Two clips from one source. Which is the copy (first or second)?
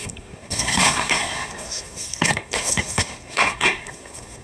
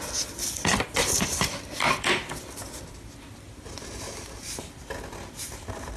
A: first